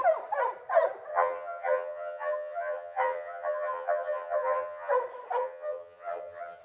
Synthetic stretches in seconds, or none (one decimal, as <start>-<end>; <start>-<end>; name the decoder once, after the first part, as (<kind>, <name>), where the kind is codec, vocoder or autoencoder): 1.1-4.9 (vocoder, HiFi-GAN); 5.4-6.6

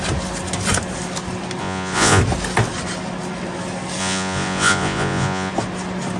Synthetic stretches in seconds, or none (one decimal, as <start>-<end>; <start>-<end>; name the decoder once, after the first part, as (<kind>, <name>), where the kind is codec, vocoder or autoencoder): 1.6-2.2 (vocoder, Vocos); 4.0-5.5

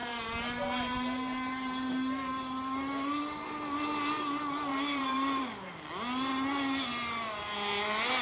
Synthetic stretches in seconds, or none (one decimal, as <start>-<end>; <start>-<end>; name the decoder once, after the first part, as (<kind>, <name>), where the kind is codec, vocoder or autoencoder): 0.0-1.9 (vocoder, BigVGAN v2); 4.7-5.4

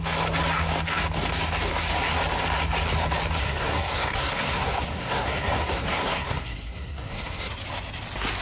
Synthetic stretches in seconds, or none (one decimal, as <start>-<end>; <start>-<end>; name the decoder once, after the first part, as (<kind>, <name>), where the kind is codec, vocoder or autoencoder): 3.4-7.5 (codec, SNAC)

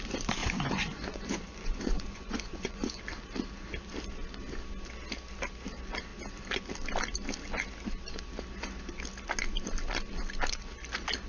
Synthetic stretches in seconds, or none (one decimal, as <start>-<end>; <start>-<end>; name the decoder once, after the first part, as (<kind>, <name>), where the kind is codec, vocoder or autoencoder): 0.4-3.0 (vocoder, Vocos)

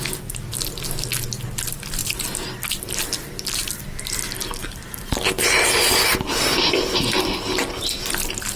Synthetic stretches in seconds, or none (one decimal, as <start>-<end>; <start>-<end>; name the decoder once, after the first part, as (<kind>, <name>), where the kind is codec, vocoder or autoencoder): 4.6-5.2 (vocoder, BigVGAN v2)